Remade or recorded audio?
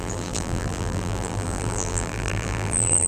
remade